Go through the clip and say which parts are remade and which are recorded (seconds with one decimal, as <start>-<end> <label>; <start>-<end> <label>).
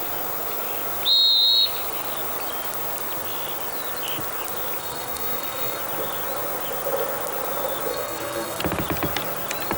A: 0.0-4.8 recorded; 4.8-5.8 remade; 5.8-7.9 recorded; 7.9-8.6 remade; 8.6-9.8 recorded